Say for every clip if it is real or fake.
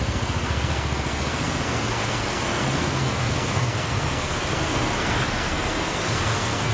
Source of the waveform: fake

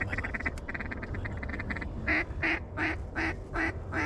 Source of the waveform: real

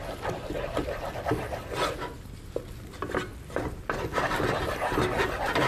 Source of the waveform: real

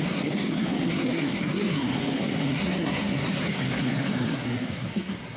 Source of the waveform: fake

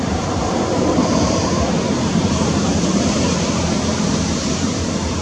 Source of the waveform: fake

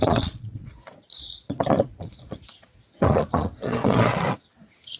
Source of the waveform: fake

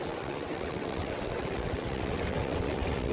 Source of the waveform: fake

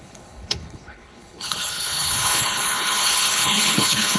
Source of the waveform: fake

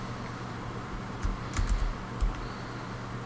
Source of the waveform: real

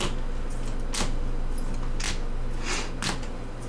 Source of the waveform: real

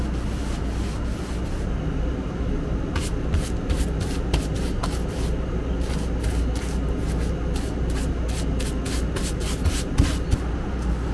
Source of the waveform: real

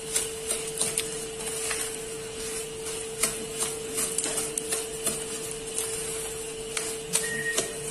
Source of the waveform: real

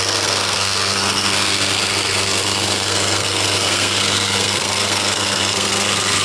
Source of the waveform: fake